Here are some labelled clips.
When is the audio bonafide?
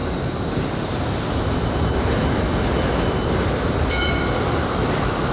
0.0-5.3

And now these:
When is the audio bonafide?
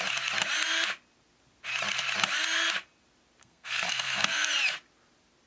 0.0-3.4; 4.5-5.5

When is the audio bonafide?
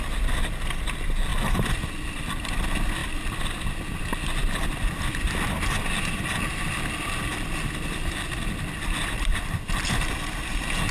0.0-4.4; 5.2-6.5; 10.1-10.9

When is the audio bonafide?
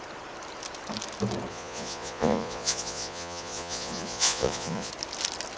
0.0-1.5; 4.9-5.6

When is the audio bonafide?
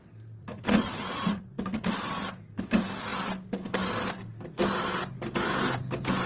0.0-0.4; 1.4-6.3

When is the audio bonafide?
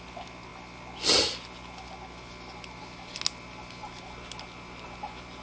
0.0-5.4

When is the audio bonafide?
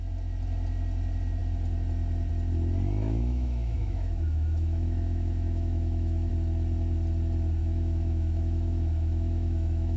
0.0-3.0; 6.3-7.6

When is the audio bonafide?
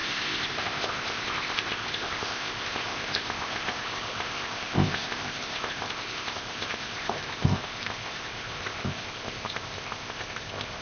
none